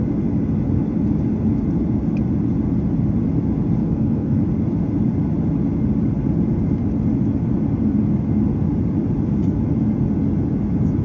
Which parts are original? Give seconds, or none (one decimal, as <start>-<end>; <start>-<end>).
0.0-3.8; 4.4-11.0